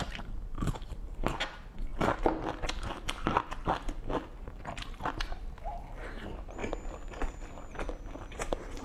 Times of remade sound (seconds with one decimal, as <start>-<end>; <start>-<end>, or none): 0.0-1.9; 6.1-6.6; 7.9-8.8